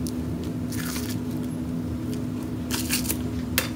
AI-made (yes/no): no